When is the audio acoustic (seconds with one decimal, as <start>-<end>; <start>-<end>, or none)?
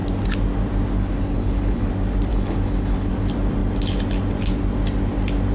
0.0-1.0; 1.9-2.3; 3.1-5.5